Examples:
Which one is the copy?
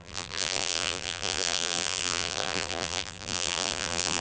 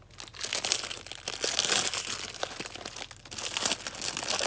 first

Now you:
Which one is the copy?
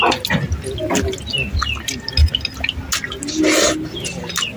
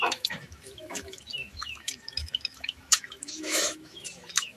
second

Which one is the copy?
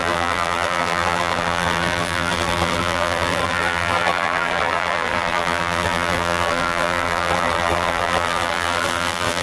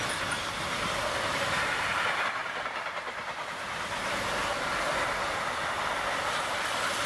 first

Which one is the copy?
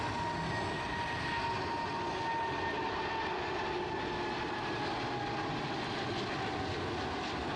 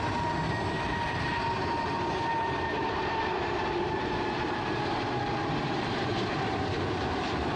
second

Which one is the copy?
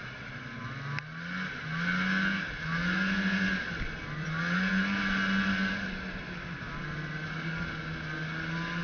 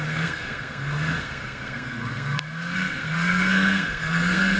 second